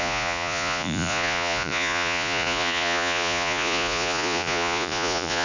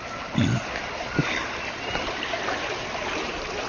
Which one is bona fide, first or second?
second